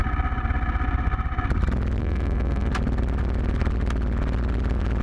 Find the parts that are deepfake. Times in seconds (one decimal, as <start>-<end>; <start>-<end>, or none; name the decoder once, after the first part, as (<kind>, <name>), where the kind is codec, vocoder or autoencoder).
2.0-2.7 (codec, SNAC)